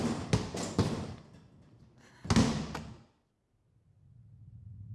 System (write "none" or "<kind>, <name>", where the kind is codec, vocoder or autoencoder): none